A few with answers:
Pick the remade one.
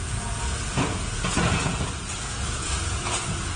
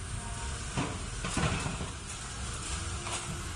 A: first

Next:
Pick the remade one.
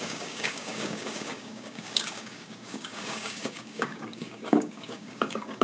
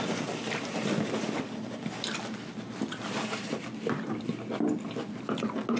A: first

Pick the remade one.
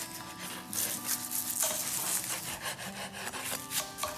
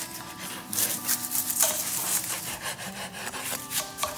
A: second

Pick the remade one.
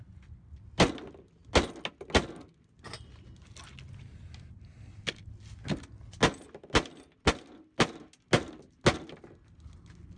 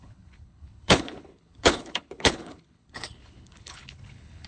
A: second